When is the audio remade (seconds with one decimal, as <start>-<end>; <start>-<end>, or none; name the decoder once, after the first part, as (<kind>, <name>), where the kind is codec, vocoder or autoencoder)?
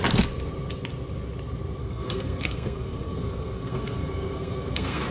1.8-5.1 (codec, SNAC)